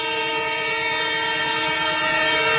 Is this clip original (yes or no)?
yes